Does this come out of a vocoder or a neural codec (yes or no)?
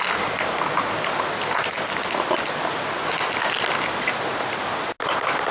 no